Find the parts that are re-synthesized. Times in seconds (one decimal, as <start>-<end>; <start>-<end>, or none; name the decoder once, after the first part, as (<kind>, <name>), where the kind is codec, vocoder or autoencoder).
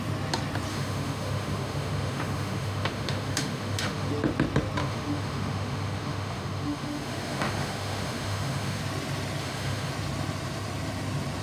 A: 0.7-4.1 (autoencoder, DAC-VAE); 4.8-8.8; 9.4-9.9